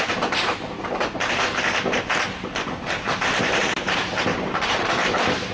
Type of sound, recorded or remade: remade